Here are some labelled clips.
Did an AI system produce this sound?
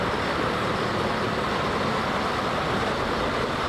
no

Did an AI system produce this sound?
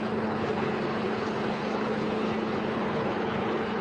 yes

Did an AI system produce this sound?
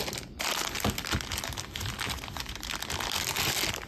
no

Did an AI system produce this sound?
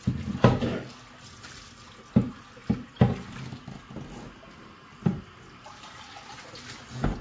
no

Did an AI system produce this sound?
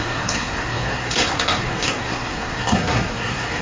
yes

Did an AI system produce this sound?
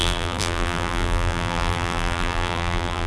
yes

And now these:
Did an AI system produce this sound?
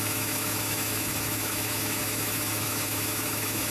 yes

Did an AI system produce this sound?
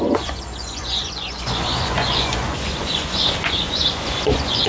yes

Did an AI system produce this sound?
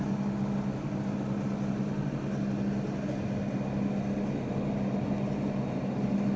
no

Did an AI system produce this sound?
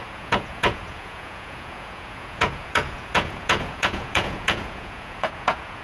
yes